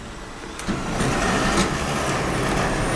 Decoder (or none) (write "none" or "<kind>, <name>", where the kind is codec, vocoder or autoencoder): none